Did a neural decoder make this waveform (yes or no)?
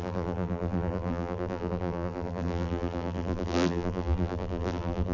yes